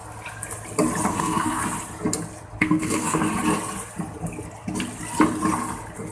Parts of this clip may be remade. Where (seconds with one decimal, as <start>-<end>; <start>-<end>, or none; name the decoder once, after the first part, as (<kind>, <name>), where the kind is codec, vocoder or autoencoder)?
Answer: 1.1-1.6 (codec, SNAC); 2.6-3.2